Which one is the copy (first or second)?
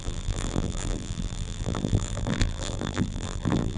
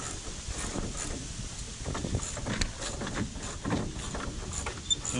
first